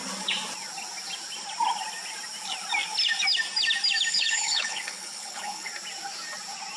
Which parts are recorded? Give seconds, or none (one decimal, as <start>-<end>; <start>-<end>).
0.0-4.1; 5.7-6.8